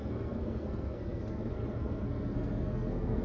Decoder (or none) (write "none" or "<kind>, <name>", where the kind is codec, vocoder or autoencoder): codec, SNAC